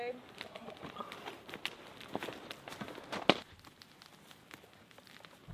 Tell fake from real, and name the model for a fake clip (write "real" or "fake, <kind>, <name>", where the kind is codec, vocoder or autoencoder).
real